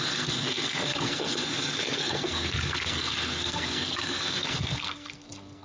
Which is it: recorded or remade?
remade